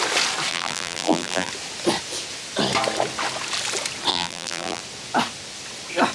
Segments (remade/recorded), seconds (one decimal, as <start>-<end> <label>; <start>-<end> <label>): 0.0-0.5 recorded; 0.5-1.5 remade; 1.5-4.1 recorded; 4.1-4.8 remade; 4.8-6.1 recorded